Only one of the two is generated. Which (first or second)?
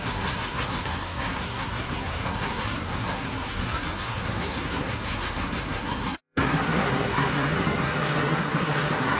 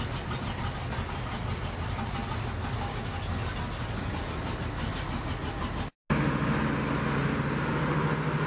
first